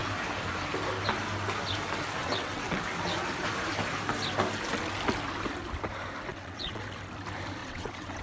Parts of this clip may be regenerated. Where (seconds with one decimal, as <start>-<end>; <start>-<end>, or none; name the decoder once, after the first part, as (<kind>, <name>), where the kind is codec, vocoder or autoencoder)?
2.2-2.8 (vocoder, WaveNeXt); 6.3-6.8; 7.6-8.2